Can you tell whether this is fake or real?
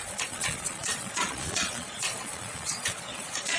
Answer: fake